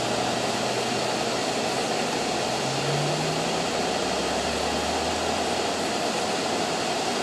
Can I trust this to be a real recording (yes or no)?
yes